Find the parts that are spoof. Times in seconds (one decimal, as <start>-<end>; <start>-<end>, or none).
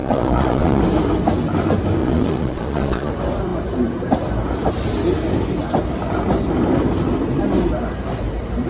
0.0-0.8; 2.0-3.1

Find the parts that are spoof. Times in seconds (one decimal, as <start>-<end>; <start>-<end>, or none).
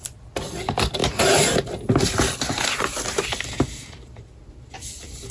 none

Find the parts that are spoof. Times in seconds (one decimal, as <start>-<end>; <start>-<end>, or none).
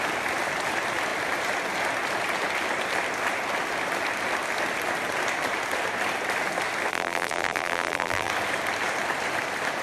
6.9-8.3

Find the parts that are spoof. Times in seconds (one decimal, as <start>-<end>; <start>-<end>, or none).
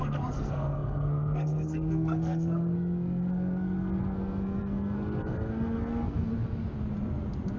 0.0-6.3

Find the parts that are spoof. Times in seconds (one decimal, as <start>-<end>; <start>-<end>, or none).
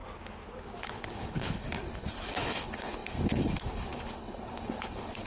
0.8-5.3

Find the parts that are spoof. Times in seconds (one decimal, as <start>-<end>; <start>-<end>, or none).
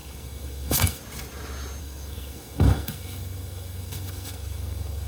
0.0-1.0; 1.8-5.1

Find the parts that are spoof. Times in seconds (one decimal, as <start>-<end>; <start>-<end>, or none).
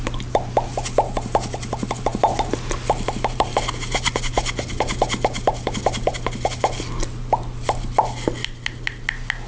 none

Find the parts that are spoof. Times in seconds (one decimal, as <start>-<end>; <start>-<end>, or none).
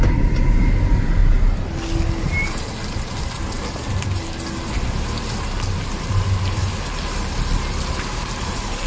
none